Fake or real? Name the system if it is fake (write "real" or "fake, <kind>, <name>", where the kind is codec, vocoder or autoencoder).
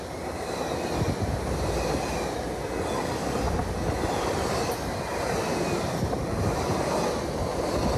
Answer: real